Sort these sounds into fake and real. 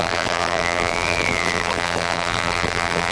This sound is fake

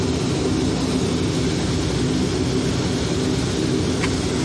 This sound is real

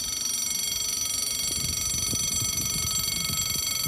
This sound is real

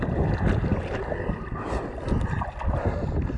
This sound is real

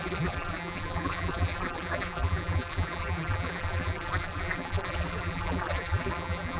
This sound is fake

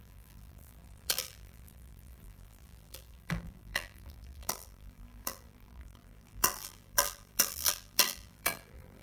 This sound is fake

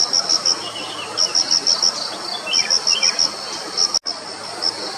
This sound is real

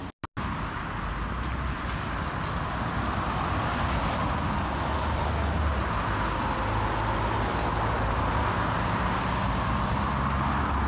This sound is real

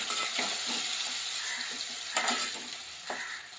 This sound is real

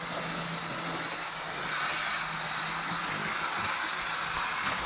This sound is real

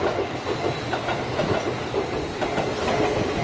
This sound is real